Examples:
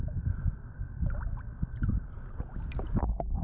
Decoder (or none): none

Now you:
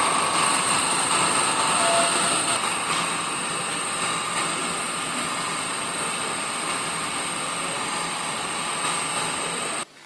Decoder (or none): none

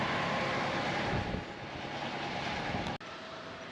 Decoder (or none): none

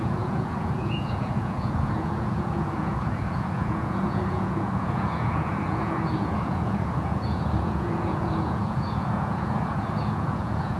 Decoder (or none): vocoder, Vocos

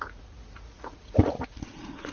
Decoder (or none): vocoder, Vocos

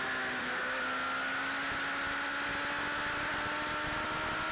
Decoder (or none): none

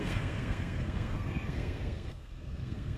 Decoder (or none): codec, SNAC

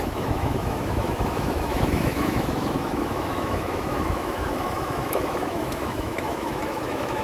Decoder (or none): autoencoder, DAC-VAE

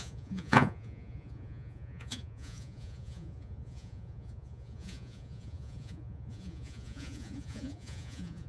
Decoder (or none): vocoder, Vocos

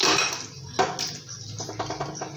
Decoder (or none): none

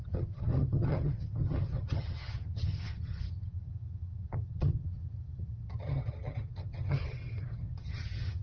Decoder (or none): vocoder, HiFi-GAN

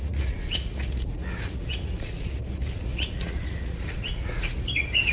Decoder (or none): vocoder, Vocos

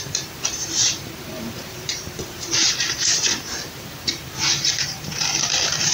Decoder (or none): vocoder, BigVGAN v2